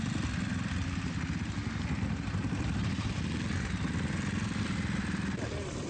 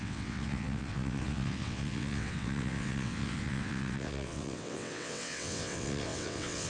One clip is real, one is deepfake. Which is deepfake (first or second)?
second